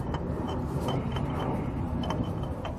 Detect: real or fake real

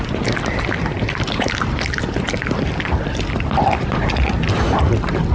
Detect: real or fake fake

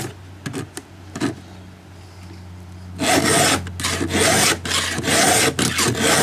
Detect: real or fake real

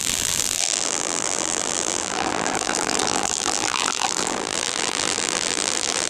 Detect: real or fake fake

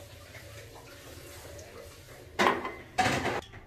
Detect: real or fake real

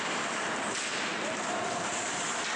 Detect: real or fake fake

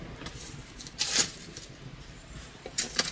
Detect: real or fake fake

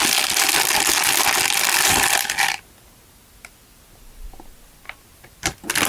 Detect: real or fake real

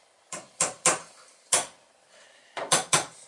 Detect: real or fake fake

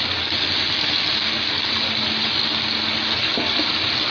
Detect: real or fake real